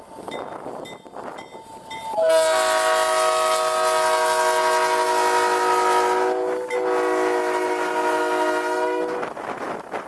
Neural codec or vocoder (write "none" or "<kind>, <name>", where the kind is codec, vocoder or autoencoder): none